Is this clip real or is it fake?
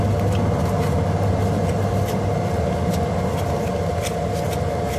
real